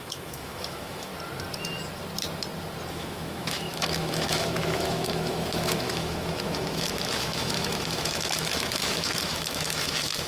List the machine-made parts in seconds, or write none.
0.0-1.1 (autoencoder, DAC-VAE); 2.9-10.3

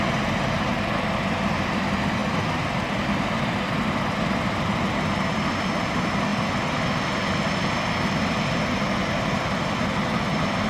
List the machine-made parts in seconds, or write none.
none

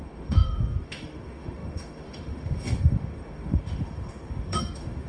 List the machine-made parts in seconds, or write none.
0.0-5.1 (autoencoder, DAC-VAE)

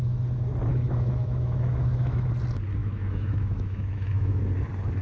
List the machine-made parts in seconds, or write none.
0.7-2.3 (autoencoder, DAC-VAE); 2.8-4.4

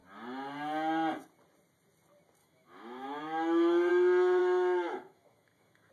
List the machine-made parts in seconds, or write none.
2.4-3.9 (autoencoder, DAC-VAE); 4.4-5.9